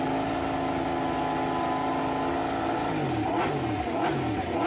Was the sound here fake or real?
real